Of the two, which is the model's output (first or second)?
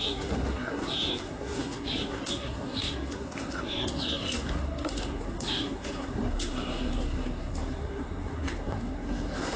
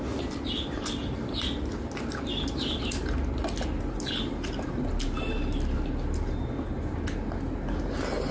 first